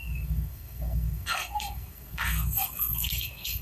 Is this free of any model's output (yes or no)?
no